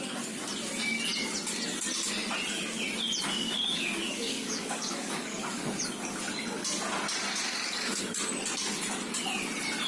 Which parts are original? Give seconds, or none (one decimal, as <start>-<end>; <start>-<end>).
0.0-3.4; 5.6-7.5; 8.0-9.9